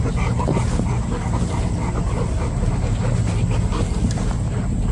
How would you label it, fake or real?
real